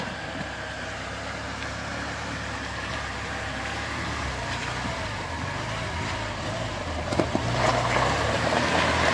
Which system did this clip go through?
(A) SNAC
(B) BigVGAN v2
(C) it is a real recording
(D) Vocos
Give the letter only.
B